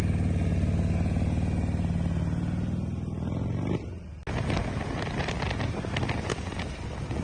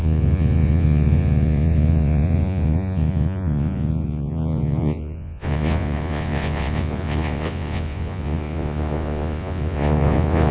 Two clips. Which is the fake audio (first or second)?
second